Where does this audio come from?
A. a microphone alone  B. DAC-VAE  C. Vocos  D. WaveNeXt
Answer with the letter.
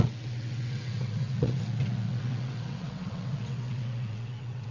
D